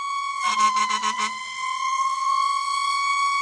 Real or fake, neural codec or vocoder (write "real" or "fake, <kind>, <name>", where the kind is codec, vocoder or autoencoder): fake, vocoder, WaveNeXt